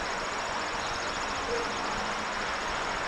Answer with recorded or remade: remade